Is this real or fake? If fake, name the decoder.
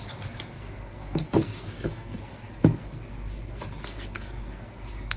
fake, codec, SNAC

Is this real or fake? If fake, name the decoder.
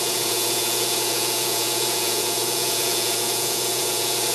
fake, vocoder, Vocos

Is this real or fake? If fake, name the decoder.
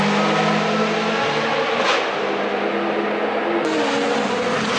real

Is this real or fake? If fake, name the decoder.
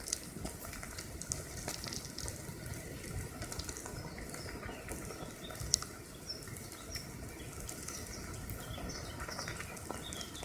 real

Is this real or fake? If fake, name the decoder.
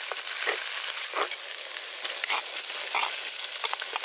real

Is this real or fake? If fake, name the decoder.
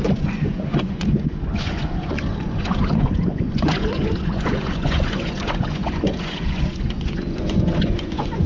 fake, vocoder, Vocos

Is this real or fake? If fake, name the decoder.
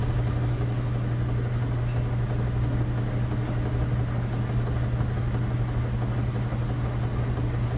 real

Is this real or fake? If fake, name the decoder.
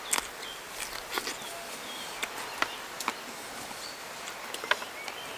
real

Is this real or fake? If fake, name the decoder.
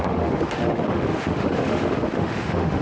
fake, autoencoder, DAC-VAE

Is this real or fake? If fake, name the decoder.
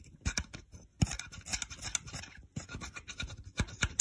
real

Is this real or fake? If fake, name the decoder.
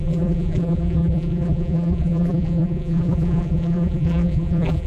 fake, vocoder, BigVGAN v2